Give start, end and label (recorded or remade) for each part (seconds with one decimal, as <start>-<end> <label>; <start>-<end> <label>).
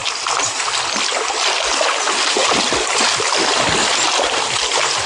0.0-5.1 recorded